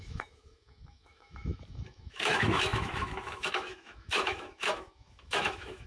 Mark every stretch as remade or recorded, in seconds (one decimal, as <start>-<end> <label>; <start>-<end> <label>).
0.0-5.9 remade